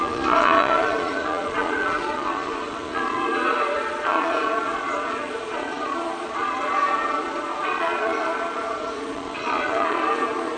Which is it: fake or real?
fake